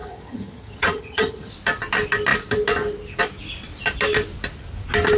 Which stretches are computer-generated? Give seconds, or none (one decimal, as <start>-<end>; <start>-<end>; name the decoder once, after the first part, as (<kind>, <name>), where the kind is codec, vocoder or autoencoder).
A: 0.0-1.5 (vocoder, HiFi-GAN)